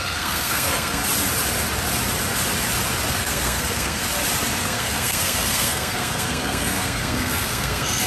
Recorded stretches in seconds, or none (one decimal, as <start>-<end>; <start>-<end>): 1.0-3.1; 4.0-4.6